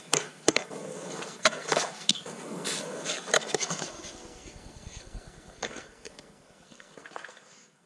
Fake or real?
fake